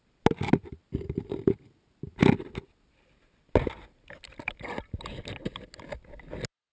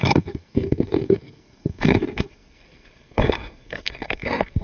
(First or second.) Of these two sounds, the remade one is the second